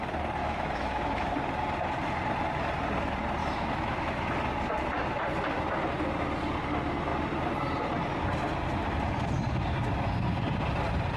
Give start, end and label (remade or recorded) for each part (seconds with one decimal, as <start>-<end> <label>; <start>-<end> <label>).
0.0-0.4 recorded; 0.4-1.3 remade; 1.3-3.4 recorded; 3.4-4.3 remade; 4.3-11.2 recorded